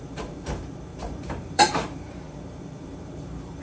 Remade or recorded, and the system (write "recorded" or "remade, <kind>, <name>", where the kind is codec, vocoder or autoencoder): remade, vocoder, BigVGAN v2